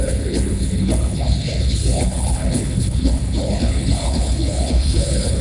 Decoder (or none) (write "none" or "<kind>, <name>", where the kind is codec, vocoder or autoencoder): codec, HILCodec